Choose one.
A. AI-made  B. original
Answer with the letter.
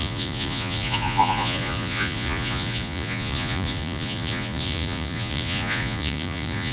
A